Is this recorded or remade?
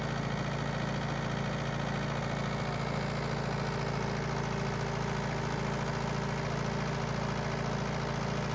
recorded